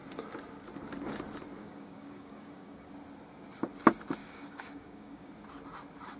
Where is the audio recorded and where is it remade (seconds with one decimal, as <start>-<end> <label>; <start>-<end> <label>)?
0.0-1.6 recorded; 1.6-2.9 remade; 2.9-4.2 recorded; 4.2-5.3 remade; 5.3-6.2 recorded